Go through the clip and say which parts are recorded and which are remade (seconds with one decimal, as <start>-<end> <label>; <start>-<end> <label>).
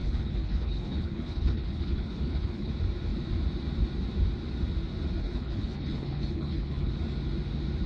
0.0-2.7 remade; 2.7-5.2 recorded; 5.2-6.9 remade; 6.9-7.9 recorded